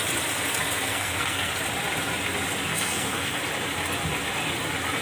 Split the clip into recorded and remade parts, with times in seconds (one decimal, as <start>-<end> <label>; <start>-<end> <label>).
0.0-0.9 recorded; 0.9-1.5 remade; 1.5-2.7 recorded; 2.7-3.4 remade; 3.4-5.0 recorded